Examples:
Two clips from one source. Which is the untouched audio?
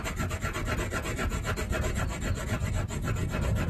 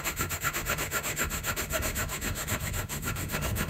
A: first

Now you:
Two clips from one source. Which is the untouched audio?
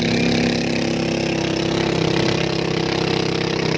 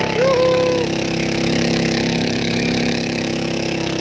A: first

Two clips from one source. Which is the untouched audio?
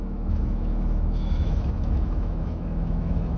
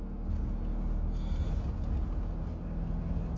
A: second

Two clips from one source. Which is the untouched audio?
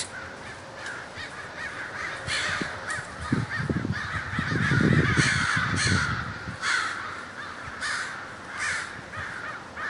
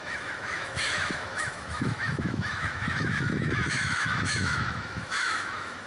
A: first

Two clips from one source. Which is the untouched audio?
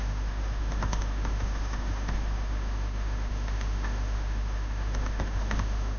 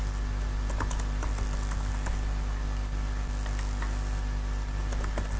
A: second